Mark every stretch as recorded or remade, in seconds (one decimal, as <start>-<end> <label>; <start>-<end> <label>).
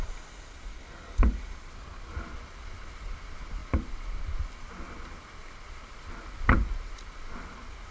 0.0-7.9 recorded